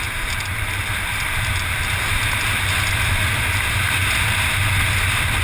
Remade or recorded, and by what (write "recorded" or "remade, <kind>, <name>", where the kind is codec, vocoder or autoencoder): recorded